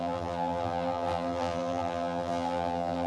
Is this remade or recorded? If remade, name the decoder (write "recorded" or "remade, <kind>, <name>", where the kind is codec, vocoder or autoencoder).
remade, vocoder, BigVGAN v2